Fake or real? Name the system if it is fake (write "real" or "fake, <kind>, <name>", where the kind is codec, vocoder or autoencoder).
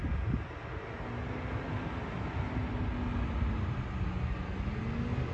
real